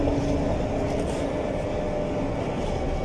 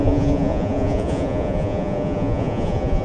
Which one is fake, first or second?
second